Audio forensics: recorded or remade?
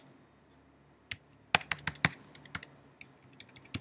recorded